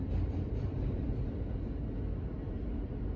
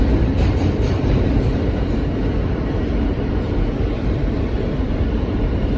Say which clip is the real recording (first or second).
first